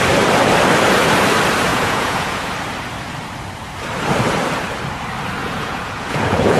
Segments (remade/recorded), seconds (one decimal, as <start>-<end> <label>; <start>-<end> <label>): 0.0-1.7 recorded; 1.7-2.5 remade; 2.5-5.4 recorded; 5.4-6.6 remade